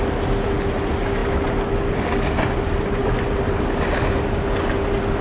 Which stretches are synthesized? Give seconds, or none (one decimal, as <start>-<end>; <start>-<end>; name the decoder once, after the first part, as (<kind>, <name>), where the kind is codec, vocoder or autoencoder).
none